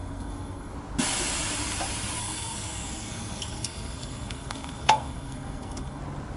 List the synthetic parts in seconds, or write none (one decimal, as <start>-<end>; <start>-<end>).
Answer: 0.0-0.7; 2.2-6.0